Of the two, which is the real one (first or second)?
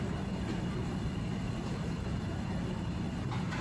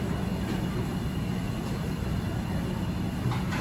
second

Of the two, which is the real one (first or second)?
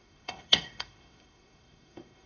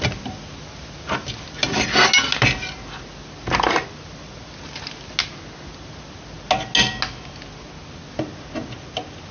second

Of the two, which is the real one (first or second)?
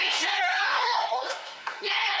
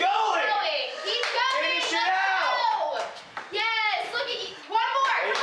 second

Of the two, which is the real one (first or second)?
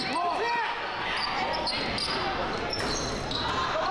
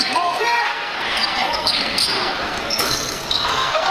first